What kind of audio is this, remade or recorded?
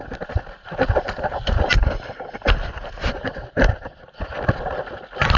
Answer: recorded